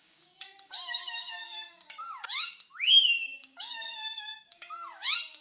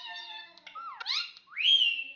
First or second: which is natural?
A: second